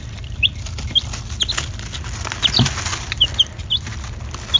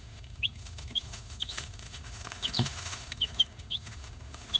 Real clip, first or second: first